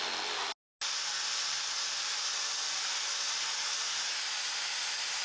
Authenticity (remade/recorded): recorded